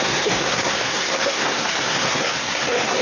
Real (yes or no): no